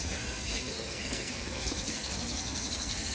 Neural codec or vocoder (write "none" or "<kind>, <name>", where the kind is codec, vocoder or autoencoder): codec, SNAC